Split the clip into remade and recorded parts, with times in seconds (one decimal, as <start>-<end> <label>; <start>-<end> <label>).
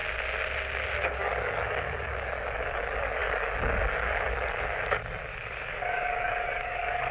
0.0-1.2 recorded; 1.2-7.1 remade